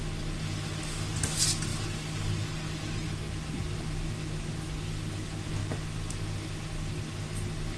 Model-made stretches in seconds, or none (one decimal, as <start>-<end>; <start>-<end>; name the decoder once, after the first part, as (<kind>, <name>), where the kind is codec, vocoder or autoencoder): none